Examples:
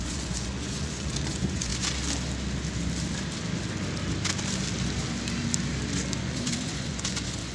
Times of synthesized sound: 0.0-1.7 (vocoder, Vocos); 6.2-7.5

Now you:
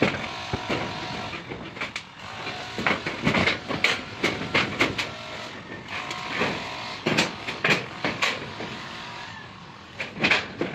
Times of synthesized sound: 3.4-4.2 (codec, DAC); 6.9-10.0

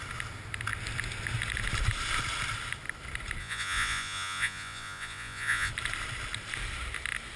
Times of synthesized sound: 3.4-5.7 (vocoder, Vocos)

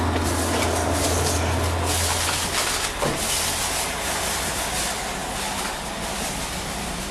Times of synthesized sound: none